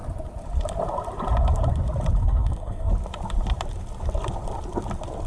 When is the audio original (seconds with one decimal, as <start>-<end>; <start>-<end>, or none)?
0.0-2.2; 2.9-5.3